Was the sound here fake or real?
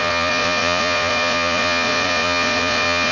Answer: fake